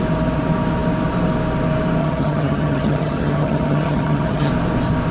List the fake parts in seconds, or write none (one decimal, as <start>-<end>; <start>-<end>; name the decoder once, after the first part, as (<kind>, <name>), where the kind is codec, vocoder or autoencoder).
2.0-4.5 (vocoder, HiFi-GAN)